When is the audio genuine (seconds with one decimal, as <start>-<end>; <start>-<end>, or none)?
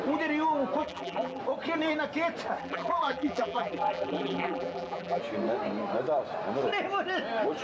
0.0-0.8; 1.4-2.6; 5.2-7.6